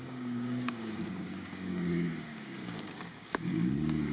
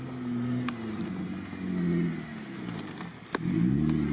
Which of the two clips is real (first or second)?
second